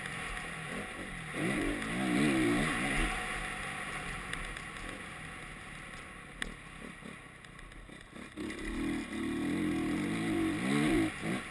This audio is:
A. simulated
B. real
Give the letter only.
B